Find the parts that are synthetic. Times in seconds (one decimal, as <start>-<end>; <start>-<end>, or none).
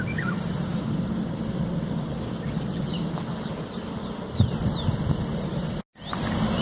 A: none